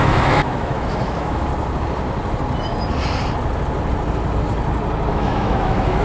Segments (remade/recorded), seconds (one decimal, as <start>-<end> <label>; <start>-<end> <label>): 0.0-1.5 remade; 1.5-5.1 recorded; 5.1-6.0 remade